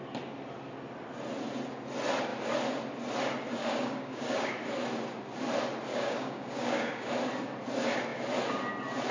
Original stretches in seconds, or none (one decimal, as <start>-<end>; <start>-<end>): 0.0-3.6; 4.5-5.9; 7.1-9.1